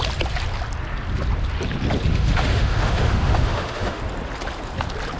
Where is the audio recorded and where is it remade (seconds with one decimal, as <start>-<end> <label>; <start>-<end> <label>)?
0.0-2.1 recorded; 2.1-4.0 remade; 4.0-5.2 recorded